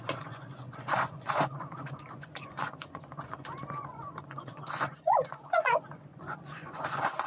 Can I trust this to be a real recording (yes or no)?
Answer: no